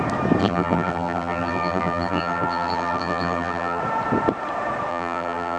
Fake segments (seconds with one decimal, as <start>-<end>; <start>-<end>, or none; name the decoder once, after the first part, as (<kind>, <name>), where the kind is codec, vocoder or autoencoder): 0.4-3.8 (vocoder, BigVGAN v2); 4.9-5.6